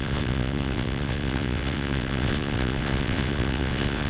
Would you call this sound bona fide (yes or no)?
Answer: no